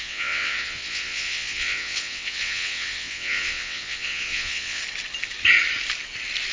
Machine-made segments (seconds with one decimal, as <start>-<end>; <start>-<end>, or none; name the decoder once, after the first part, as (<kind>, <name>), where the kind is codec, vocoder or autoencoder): 0.0-4.8 (vocoder, WaveNeXt)